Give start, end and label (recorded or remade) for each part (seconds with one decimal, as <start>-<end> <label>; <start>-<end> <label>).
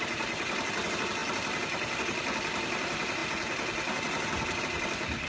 0.0-5.3 recorded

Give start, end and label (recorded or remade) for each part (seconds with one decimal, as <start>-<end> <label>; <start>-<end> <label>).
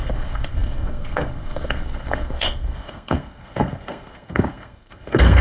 0.0-5.4 remade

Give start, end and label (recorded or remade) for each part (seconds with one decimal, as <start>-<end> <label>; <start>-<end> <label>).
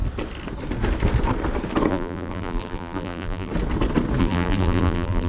0.0-1.9 recorded; 1.9-3.5 remade; 3.5-4.2 recorded; 4.2-5.3 remade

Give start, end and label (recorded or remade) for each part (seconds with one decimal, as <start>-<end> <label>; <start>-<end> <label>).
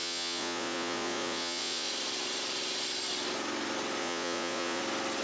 0.0-1.9 remade; 1.9-4.0 recorded; 4.0-4.8 remade; 4.8-5.2 recorded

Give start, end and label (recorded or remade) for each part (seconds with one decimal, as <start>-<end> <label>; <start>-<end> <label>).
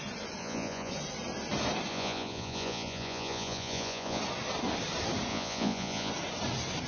0.0-0.4 recorded; 0.4-0.9 remade; 0.9-1.9 recorded; 1.9-4.2 remade; 4.2-5.3 recorded; 5.3-6.1 remade; 6.1-6.9 recorded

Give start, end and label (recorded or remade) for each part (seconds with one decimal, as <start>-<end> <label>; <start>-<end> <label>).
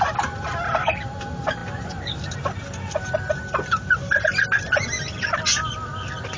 0.0-6.4 recorded